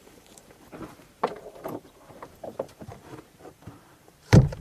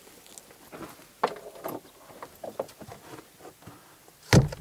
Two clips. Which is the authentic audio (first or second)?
second